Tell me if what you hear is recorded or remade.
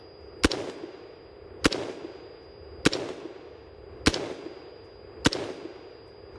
recorded